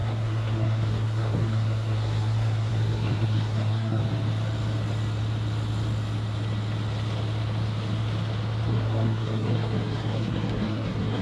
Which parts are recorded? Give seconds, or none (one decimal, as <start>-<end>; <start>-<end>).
4.0-8.7